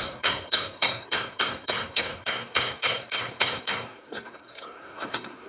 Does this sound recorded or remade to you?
remade